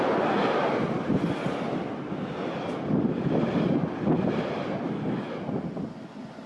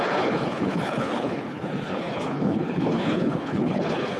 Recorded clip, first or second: first